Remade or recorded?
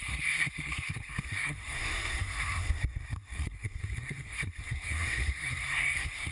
remade